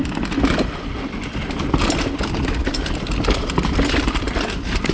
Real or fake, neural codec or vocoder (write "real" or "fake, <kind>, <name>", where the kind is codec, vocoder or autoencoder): real